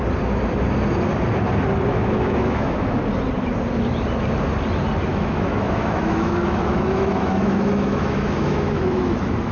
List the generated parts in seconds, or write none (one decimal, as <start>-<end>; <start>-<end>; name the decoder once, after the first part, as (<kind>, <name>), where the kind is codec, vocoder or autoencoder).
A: 1.9-3.0 (autoencoder, DAC-VAE); 5.1-9.5